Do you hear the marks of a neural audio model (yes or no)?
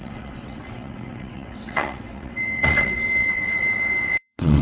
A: yes